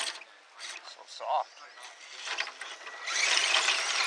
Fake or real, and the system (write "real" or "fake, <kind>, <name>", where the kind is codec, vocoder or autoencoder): real